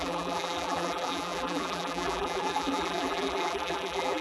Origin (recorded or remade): remade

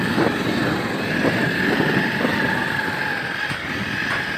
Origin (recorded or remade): recorded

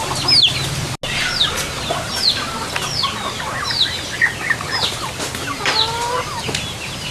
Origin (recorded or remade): recorded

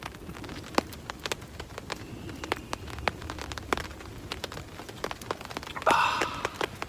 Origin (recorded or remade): recorded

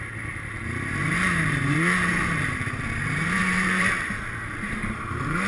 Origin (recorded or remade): remade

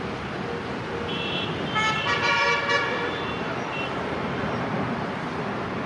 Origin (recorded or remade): remade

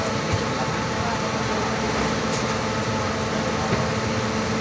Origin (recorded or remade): recorded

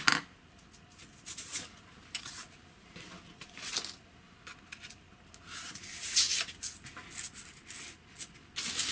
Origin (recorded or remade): recorded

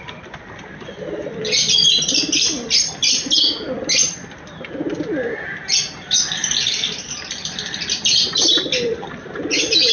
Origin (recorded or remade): remade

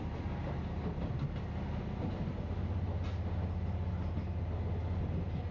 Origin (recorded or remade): recorded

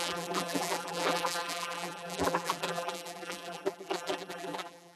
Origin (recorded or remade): remade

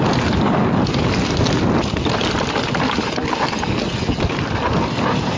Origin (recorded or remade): recorded